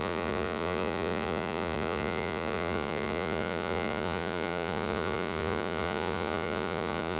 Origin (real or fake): fake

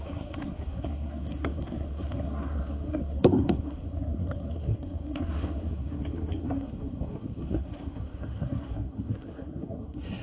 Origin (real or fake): fake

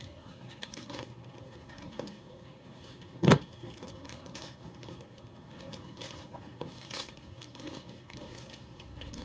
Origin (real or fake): fake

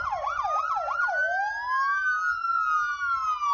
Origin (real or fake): real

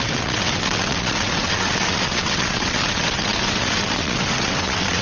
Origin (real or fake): fake